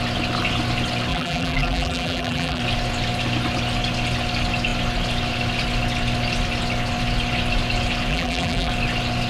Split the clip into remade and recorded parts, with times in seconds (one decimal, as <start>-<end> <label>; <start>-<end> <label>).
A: 0.0-1.1 recorded; 1.1-2.6 remade; 2.6-8.1 recorded; 8.1-8.7 remade; 8.7-9.3 recorded